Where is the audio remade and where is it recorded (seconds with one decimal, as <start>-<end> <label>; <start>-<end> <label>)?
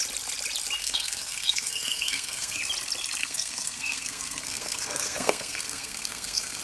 0.0-0.8 recorded; 0.8-2.6 remade; 2.6-3.2 recorded; 3.2-6.6 remade